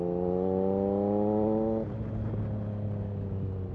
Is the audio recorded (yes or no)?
yes